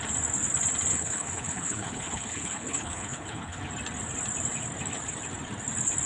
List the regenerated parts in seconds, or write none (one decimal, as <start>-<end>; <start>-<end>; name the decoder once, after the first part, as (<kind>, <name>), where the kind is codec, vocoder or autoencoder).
0.9-3.6 (codec, HILCodec)